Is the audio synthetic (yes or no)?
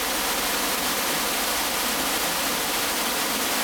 no